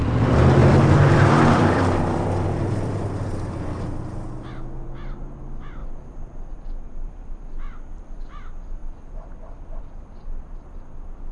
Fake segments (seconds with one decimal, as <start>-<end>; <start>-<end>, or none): 0.6-2.9; 5.8-6.5